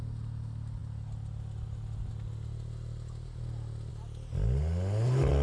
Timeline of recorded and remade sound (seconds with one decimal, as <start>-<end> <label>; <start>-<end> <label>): 0.0-5.4 recorded

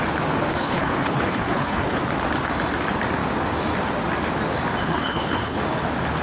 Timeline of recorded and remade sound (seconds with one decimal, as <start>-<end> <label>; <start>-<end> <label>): 0.0-0.5 recorded; 0.5-2.0 remade; 2.0-4.8 recorded; 4.8-5.6 remade; 5.6-6.2 recorded

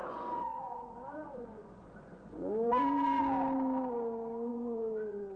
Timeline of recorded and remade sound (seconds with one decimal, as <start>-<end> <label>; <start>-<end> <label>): 0.0-3.2 remade; 3.2-4.5 recorded; 4.5-5.4 remade

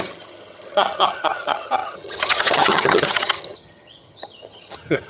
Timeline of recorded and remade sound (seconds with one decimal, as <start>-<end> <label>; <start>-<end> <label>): 0.0-5.1 remade

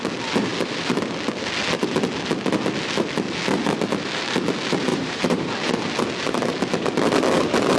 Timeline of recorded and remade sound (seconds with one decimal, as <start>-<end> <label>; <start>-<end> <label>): 0.0-4.9 recorded; 4.9-5.5 remade; 5.5-7.8 recorded

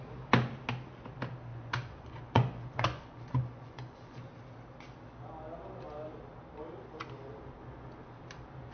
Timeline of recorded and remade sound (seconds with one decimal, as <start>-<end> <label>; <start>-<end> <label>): 0.0-1.5 recorded; 1.5-4.3 remade; 4.3-7.6 recorded; 7.6-8.2 remade; 8.2-8.7 recorded